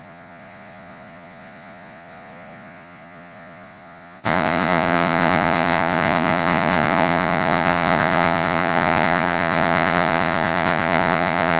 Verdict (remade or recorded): remade